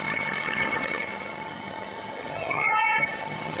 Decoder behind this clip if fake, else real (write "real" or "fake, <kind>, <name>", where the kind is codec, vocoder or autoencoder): fake, vocoder, HiFi-GAN